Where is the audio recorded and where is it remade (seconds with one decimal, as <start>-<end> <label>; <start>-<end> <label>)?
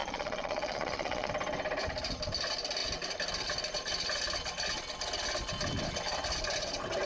0.0-1.3 remade; 1.3-7.1 recorded